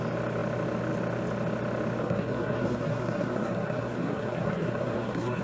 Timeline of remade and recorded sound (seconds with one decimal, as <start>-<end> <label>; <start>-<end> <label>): 0.0-2.0 recorded; 2.0-5.4 remade